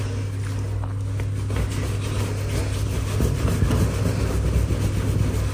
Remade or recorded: recorded